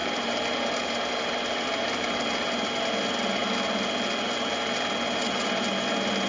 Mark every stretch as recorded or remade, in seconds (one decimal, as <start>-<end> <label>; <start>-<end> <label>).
0.0-2.3 remade; 2.3-6.3 recorded